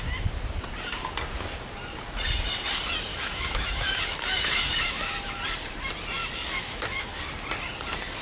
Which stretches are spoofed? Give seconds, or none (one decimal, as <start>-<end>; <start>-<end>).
3.1-5.3; 6.2-7.2